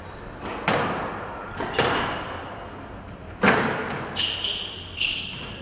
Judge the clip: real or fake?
real